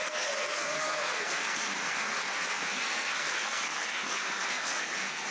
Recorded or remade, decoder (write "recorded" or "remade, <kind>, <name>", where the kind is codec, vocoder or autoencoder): remade, codec, SNAC